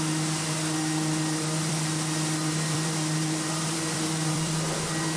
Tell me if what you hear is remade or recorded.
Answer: remade